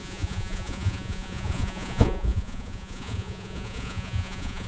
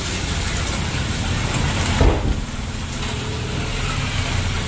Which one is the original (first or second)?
second